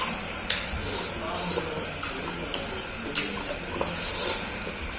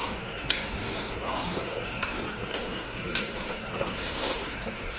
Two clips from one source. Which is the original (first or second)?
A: first